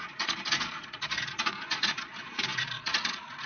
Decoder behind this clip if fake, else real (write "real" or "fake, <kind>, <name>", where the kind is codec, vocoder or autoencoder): fake, vocoder, Vocos